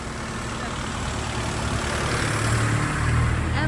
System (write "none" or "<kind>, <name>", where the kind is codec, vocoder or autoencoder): none